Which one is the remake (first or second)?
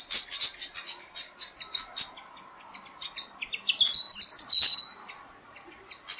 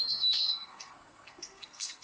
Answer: second